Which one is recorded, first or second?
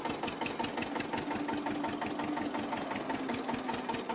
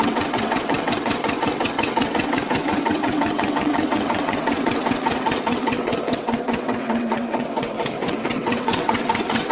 first